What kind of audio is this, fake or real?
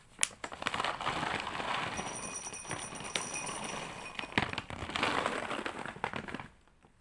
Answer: real